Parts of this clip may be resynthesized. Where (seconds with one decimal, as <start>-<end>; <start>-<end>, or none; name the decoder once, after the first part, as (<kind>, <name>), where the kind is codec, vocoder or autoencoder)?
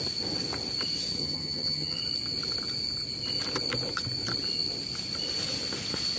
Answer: 1.2-2.0 (vocoder, HiFi-GAN)